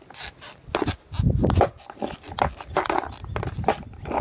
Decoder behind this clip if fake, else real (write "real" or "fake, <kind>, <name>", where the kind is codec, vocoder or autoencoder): real